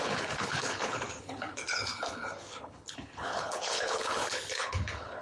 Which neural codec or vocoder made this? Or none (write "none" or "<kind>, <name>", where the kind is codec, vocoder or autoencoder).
codec, HILCodec